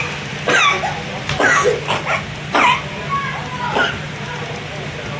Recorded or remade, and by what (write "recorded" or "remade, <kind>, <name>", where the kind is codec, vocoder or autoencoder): recorded